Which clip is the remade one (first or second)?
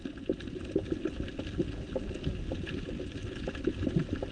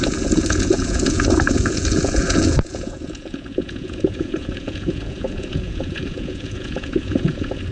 second